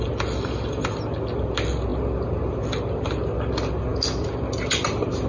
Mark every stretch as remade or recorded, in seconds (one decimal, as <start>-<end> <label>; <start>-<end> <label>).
0.0-5.3 recorded

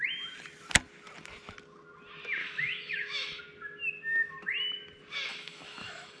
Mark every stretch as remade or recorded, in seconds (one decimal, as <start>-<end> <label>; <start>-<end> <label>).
0.0-2.4 recorded; 2.4-3.4 remade; 3.4-5.3 recorded; 5.3-6.2 remade

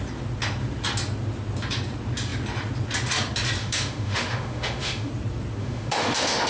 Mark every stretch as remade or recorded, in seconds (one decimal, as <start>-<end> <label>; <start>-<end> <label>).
0.0-3.6 recorded; 3.6-5.1 remade; 5.1-5.6 recorded; 5.6-6.5 remade

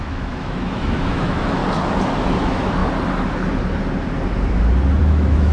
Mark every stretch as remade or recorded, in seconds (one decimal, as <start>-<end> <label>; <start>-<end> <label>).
0.0-1.6 remade; 1.6-2.4 recorded; 2.4-2.8 remade; 2.8-5.0 recorded; 5.0-5.5 remade

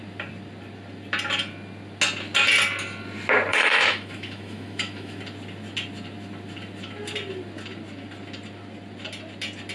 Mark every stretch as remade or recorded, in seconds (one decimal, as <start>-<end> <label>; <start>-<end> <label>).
0.0-3.5 recorded; 3.5-5.2 remade; 5.2-9.7 recorded

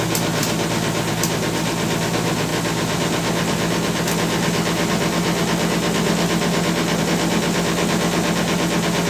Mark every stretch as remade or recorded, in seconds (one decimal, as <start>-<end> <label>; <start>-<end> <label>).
0.0-9.1 recorded